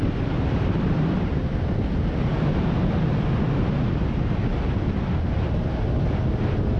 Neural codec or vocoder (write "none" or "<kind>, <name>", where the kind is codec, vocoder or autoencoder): none